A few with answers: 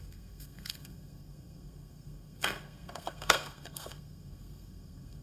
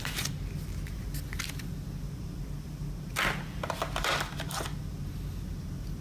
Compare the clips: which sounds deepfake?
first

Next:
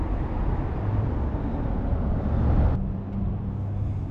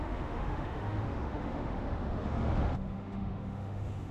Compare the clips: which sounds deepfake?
second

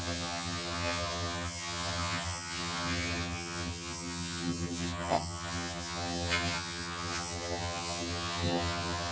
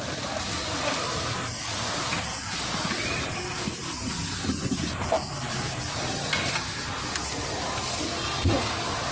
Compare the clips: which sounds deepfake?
first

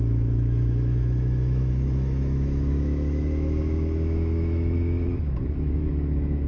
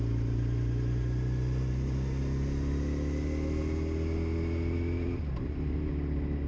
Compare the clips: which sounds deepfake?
first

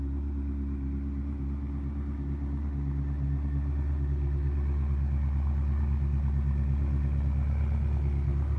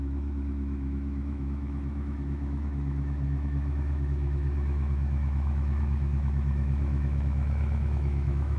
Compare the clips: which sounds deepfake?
second